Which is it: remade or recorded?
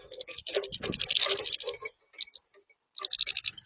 recorded